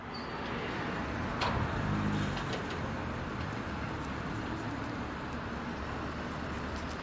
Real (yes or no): yes